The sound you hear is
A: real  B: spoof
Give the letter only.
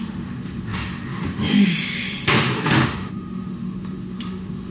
B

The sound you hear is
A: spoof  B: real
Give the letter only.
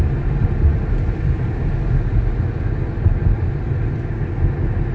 B